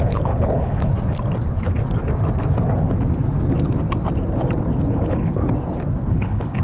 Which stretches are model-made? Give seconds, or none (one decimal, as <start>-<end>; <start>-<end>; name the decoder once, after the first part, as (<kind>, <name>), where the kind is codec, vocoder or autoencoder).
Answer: 0.0-0.9 (codec, HILCodec); 4.9-5.4; 6.1-6.6

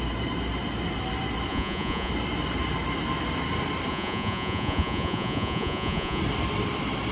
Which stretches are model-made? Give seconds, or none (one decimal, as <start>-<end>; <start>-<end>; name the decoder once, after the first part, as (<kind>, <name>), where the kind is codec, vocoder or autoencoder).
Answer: 1.5-2.1 (vocoder, Vocos); 3.9-6.2

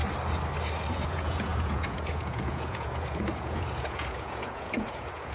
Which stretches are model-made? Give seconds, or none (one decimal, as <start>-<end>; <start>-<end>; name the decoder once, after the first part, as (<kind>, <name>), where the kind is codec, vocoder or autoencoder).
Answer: 0.9-5.3 (vocoder, Vocos)

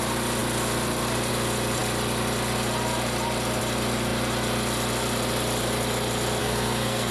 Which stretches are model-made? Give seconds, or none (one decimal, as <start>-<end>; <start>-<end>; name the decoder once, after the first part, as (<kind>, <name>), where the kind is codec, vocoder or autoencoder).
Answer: 6.4-7.1 (codec, SNAC)